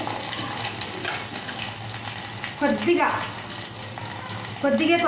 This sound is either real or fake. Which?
real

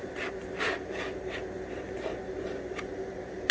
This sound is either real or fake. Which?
real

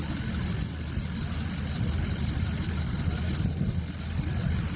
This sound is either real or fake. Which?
real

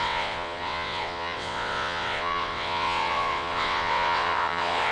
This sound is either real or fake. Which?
fake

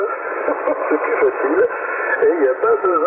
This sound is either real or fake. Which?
real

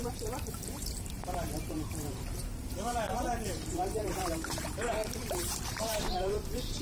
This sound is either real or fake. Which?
fake